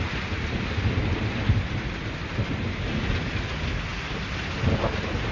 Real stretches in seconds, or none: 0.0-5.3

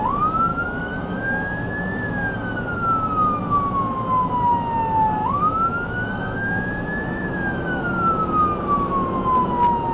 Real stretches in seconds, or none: 0.0-0.5; 1.8-5.2; 7.8-9.9

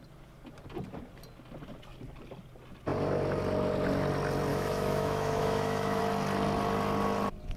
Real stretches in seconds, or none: 0.0-4.5; 6.0-7.6